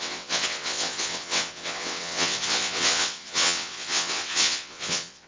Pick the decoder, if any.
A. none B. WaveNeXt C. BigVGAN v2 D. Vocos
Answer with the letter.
B